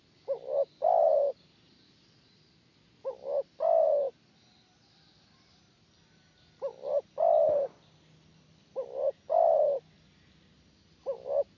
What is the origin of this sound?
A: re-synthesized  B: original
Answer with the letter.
B